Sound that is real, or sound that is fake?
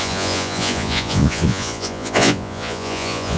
fake